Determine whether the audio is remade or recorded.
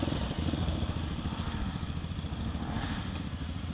recorded